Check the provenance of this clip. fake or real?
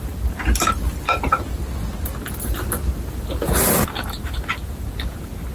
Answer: real